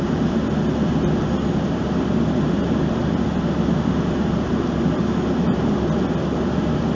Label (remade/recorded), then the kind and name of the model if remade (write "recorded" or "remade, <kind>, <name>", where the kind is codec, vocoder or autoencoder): recorded